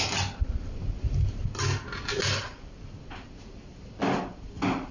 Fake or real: real